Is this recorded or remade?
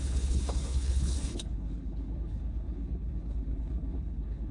remade